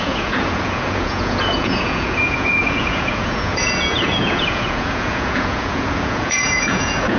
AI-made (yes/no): yes